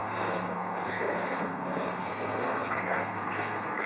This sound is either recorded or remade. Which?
remade